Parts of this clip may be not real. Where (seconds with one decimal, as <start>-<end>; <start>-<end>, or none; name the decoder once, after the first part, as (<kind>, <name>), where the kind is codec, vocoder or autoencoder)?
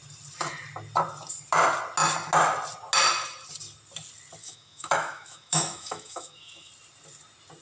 4.4-6.7 (autoencoder, DAC-VAE)